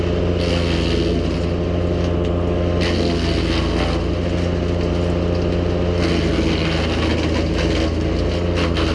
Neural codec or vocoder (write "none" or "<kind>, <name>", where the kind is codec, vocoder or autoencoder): none